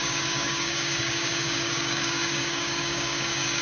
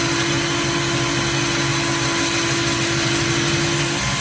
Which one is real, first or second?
second